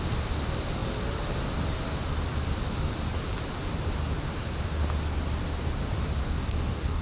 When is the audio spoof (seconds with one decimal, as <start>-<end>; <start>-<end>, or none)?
6.2-7.0